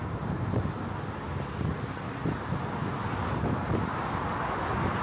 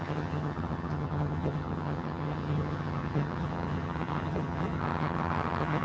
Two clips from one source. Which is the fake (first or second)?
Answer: second